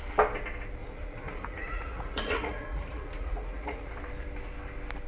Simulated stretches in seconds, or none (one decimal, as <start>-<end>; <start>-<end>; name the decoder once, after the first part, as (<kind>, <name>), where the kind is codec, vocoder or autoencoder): 0.8-3.9 (vocoder, Vocos)